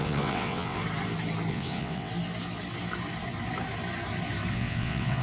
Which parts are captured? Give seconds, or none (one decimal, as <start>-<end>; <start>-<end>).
0.8-1.5; 2.1-4.5